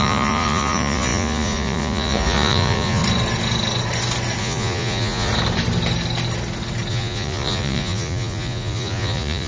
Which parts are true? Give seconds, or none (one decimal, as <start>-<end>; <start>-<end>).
3.0-4.4; 5.3-6.9